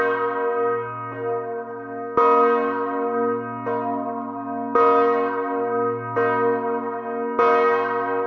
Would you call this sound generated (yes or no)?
no